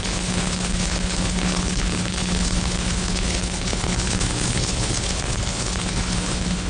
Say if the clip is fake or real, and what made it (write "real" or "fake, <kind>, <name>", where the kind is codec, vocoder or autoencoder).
fake, codec, HILCodec